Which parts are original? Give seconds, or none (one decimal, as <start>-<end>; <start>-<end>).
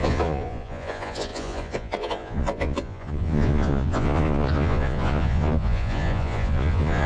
none